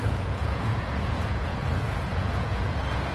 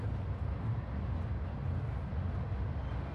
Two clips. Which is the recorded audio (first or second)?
second